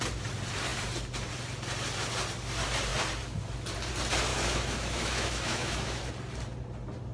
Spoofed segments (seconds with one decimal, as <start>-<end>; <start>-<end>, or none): 4.3-6.1